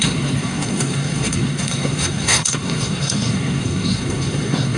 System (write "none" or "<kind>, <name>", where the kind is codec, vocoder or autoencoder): codec, SNAC